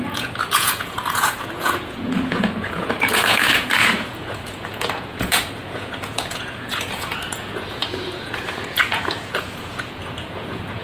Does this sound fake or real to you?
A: fake